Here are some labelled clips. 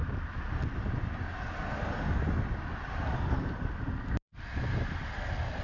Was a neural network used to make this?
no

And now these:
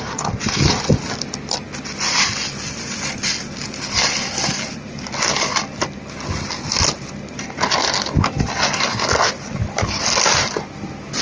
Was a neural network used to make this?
no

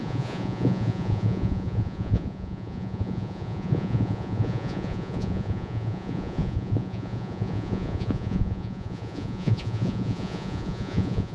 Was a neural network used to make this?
yes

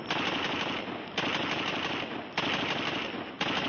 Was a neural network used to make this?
no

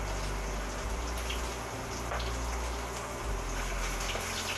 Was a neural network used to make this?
no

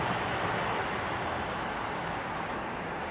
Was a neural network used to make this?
no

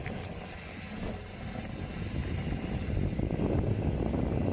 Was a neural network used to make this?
no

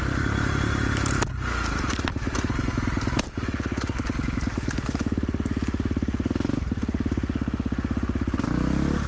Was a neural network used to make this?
no